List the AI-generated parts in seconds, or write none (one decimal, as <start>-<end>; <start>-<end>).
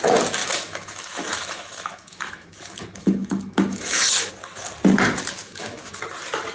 0.4-4.3; 5.4-5.9